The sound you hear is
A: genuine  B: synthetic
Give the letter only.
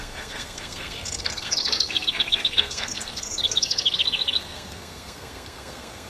B